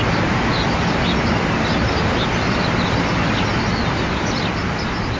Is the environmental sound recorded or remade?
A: recorded